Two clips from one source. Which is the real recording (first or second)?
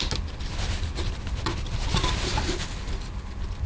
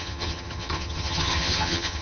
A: first